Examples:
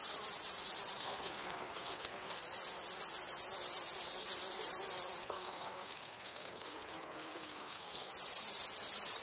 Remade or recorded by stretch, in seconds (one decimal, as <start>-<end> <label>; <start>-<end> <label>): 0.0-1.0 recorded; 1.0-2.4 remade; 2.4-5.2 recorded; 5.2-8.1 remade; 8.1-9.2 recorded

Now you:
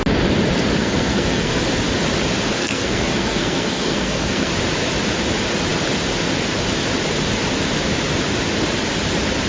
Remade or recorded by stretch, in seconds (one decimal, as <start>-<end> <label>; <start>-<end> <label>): 0.0-0.8 recorded; 0.8-1.6 remade; 1.6-2.6 recorded; 2.6-4.5 remade; 4.5-9.5 recorded

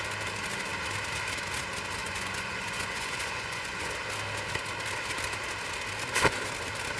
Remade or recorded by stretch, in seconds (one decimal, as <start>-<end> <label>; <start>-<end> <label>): 0.0-2.0 recorded; 2.0-3.9 remade; 3.9-7.0 recorded

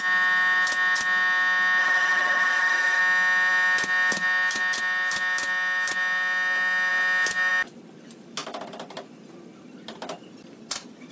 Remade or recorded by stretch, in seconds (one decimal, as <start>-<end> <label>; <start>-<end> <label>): 0.0-1.8 recorded; 1.8-3.0 remade; 3.0-11.1 recorded

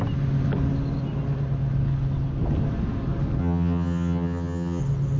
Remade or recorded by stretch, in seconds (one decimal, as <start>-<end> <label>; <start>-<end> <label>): 0.0-3.4 recorded; 3.4-4.8 remade; 4.8-5.2 recorded

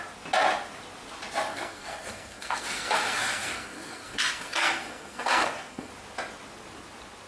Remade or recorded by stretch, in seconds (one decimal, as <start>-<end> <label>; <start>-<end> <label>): 0.0-1.5 recorded; 1.5-5.9 remade; 5.9-7.3 recorded